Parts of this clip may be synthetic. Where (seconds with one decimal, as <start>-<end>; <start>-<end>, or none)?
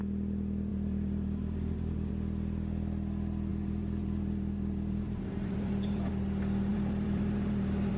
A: 0.7-2.1; 3.5-6.1; 6.7-8.0